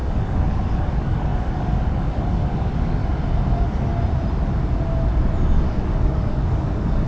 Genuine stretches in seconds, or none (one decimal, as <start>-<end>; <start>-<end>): 3.0-3.5; 3.9-5.7